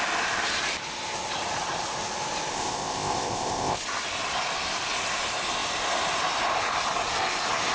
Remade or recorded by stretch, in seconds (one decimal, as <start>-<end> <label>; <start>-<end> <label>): 0.0-2.5 recorded; 2.5-3.8 remade; 3.8-7.7 recorded